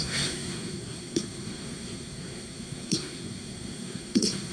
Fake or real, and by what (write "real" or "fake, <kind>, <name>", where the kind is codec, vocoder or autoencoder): fake, codec, SNAC